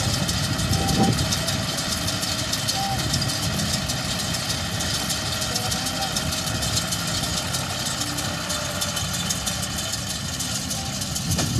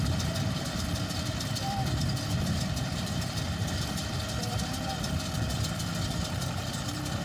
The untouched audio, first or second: first